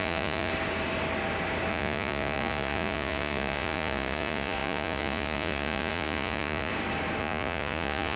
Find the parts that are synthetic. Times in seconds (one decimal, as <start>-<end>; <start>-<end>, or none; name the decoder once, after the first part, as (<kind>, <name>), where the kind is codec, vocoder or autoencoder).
0.0-0.5 (vocoder, Vocos); 1.7-6.7; 7.2-8.2